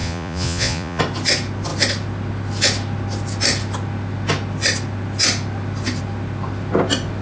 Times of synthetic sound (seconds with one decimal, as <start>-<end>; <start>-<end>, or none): 0.0-1.0